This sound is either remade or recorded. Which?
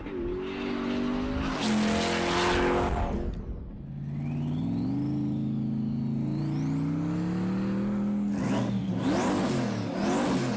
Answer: recorded